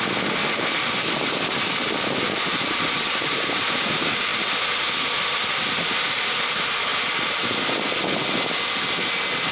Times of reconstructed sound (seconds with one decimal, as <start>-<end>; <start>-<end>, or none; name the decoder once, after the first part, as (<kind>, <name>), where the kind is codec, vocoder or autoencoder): 0.4-2.6 (vocoder, BigVGAN v2)